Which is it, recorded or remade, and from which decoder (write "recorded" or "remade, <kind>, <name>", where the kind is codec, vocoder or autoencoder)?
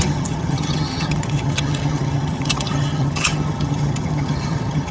remade, vocoder, HiFi-GAN